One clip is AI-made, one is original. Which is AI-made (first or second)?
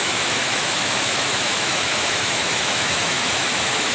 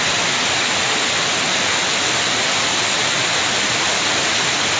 first